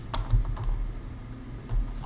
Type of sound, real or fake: real